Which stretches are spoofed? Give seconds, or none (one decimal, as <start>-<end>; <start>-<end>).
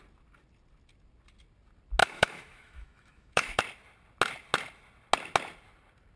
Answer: 2.0-3.6